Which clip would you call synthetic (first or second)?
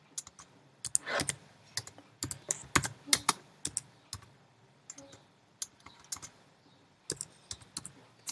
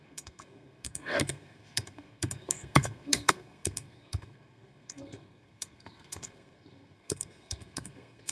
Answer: second